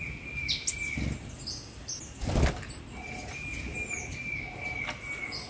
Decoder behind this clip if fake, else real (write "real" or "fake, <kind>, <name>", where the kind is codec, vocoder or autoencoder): real